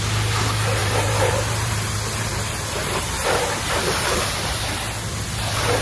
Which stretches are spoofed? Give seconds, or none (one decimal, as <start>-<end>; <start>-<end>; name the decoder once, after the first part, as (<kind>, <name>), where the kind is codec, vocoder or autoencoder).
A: 0.8-2.4 (vocoder, BigVGAN v2); 2.8-4.6